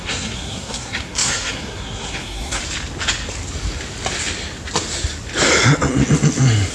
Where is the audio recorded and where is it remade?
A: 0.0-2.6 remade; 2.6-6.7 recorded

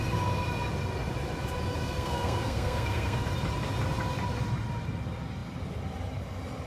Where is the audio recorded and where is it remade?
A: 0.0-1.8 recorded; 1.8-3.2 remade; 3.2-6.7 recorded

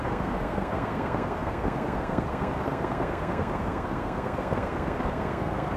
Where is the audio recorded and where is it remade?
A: 0.0-5.8 remade

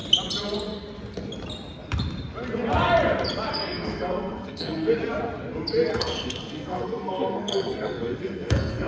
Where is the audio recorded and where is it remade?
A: 0.0-3.5 recorded; 3.5-4.9 remade; 4.9-5.9 recorded; 5.9-8.9 remade

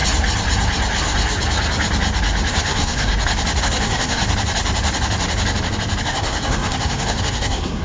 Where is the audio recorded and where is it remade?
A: 0.0-2.5 recorded; 2.5-3.1 remade; 3.1-3.6 recorded; 3.6-4.2 remade; 4.2-6.0 recorded; 6.0-7.8 remade

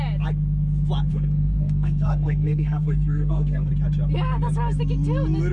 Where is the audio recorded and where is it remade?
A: 0.0-1.1 recorded; 1.1-3.7 remade; 3.7-5.5 recorded

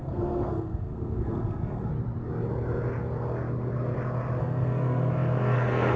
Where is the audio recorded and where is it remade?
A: 0.0-1.9 remade; 1.9-4.4 recorded; 4.4-6.0 remade